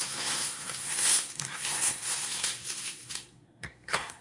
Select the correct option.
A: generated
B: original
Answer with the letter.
A